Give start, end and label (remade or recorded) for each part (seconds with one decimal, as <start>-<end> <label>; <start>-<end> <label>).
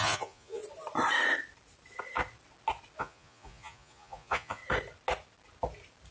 0.0-0.6 remade; 0.6-3.0 recorded; 3.0-4.6 remade; 4.6-6.1 recorded